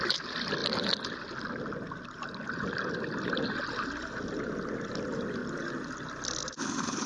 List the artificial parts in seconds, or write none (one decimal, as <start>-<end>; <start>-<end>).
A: none

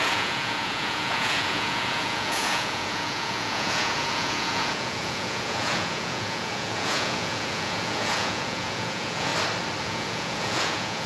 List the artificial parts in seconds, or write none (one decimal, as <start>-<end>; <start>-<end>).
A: 0.0-9.3; 9.8-11.1